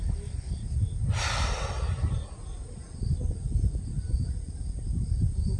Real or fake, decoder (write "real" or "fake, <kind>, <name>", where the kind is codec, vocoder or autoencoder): real